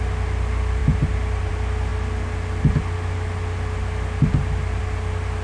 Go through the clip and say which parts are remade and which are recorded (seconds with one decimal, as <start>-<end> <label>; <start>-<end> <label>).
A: 0.0-5.4 recorded